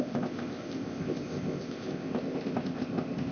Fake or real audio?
fake